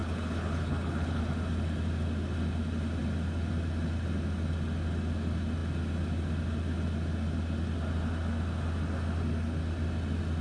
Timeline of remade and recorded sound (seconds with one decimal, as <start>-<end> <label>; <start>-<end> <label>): 0.0-1.2 remade; 1.2-10.4 recorded